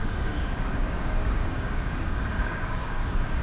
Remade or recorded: remade